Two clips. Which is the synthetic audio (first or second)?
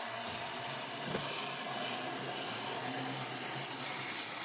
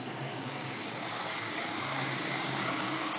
second